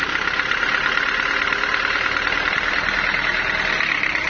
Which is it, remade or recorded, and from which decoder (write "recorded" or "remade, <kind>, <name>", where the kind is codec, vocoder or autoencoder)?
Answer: recorded